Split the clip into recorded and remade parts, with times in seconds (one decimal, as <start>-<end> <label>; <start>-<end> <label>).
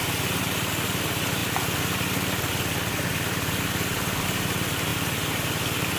0.0-6.0 recorded